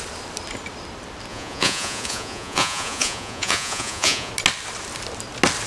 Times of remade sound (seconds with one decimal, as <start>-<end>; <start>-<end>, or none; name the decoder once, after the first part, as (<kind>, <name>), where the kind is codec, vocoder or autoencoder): 1.3-4.3 (vocoder, Vocos)